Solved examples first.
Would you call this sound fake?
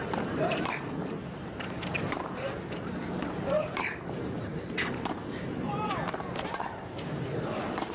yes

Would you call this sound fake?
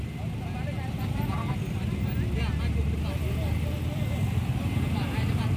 no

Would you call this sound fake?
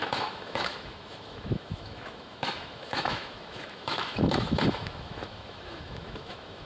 yes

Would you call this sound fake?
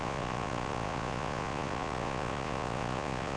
yes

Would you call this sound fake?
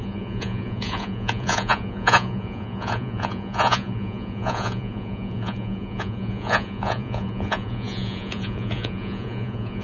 yes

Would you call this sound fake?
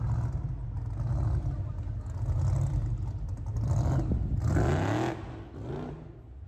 no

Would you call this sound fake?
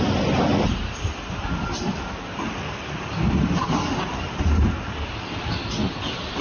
no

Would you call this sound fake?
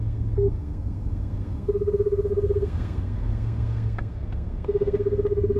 yes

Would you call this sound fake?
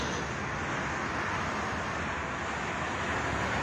no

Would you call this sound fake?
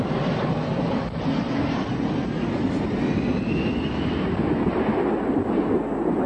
no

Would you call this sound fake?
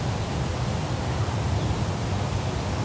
no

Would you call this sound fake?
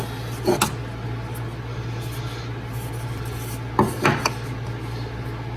no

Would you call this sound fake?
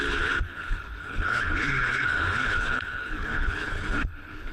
yes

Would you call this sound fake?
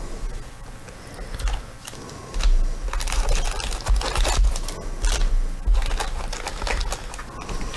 no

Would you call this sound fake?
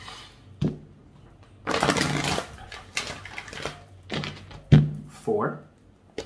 no